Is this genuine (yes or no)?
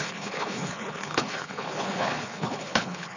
no